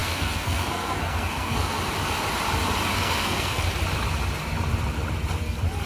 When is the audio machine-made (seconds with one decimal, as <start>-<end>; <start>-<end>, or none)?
0.0-1.8; 2.9-3.6